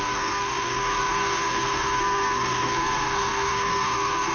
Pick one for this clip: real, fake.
fake